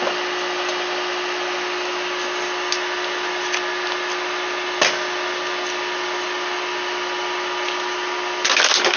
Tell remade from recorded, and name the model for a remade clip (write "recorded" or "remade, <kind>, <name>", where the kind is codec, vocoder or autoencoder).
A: recorded